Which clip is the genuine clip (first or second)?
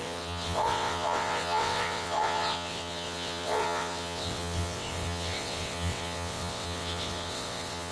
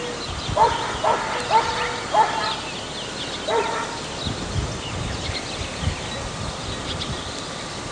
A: second